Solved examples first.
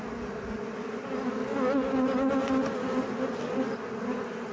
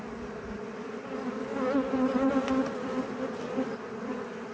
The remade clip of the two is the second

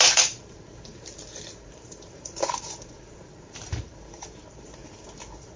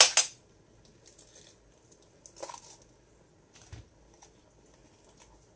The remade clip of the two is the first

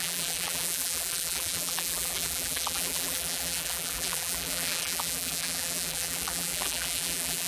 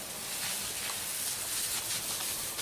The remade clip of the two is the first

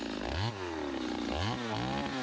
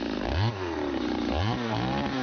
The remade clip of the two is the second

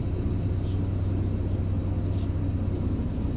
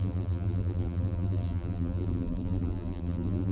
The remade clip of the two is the second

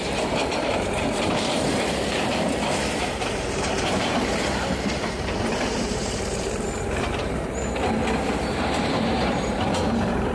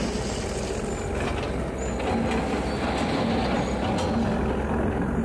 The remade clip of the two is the first